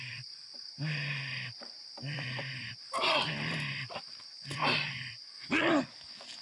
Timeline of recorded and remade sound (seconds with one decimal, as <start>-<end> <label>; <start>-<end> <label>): 0.0-0.5 remade; 0.5-1.6 recorded; 1.6-6.4 remade